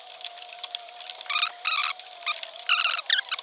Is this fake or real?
real